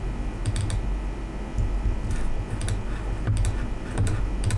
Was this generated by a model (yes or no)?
no